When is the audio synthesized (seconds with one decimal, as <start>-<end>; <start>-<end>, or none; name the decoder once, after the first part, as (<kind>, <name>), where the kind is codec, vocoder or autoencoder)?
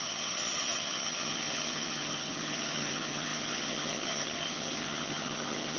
0.0-5.8 (vocoder, HiFi-GAN)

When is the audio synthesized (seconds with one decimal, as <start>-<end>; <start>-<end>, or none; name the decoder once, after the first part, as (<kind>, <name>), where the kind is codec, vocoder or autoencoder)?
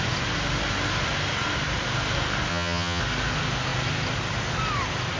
2.5-3.0 (vocoder, HiFi-GAN)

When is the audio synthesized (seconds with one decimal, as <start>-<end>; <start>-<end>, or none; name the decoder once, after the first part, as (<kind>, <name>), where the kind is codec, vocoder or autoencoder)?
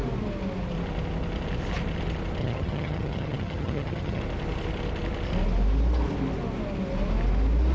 2.4-4.2 (vocoder, HiFi-GAN)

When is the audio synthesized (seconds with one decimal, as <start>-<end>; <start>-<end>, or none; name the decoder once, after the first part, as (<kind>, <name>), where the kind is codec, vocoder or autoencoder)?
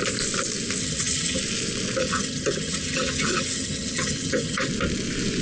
0.8-1.4 (vocoder, HiFi-GAN); 2.0-4.7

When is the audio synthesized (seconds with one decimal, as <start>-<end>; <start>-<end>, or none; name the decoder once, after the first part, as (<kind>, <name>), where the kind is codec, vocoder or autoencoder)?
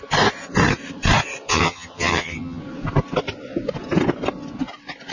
1.5-2.6 (vocoder, HiFi-GAN)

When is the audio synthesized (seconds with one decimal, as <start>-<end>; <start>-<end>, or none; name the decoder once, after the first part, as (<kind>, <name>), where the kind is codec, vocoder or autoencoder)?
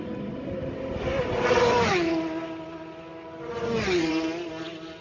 none